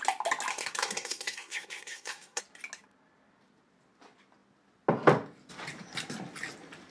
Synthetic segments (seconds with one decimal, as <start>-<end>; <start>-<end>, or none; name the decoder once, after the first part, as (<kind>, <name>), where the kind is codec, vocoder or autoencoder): 0.5-2.4 (codec, SNAC)